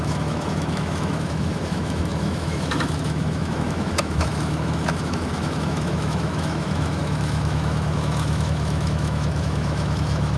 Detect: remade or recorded remade